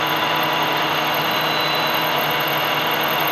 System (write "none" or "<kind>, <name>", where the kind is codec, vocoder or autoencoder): none